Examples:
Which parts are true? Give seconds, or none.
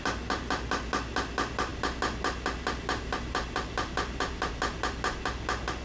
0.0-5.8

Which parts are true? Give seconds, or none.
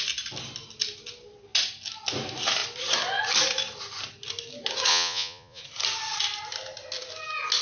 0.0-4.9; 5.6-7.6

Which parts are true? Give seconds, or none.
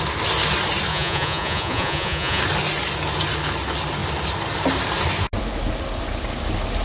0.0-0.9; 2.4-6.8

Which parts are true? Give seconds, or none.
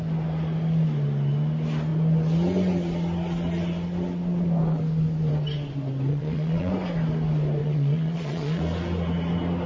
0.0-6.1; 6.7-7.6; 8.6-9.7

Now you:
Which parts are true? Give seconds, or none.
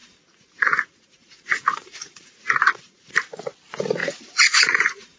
3.1-4.0